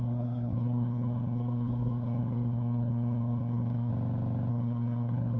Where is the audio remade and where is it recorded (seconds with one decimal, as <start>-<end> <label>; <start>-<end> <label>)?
0.0-3.9 remade; 3.9-4.5 recorded; 4.5-5.4 remade